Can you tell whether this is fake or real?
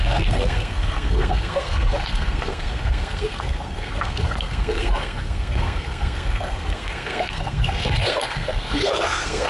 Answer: fake